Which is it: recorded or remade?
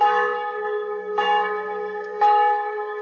remade